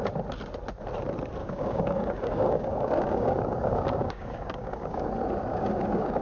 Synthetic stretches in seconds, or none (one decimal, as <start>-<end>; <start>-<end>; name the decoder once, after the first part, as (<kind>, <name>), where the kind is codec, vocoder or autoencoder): 1.4-5.1 (codec, DAC); 5.5-6.2